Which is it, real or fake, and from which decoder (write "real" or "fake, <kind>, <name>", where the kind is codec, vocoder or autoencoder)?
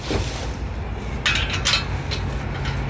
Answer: real